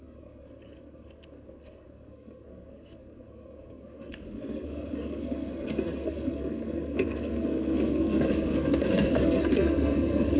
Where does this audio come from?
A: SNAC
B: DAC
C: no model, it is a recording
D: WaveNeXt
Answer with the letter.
A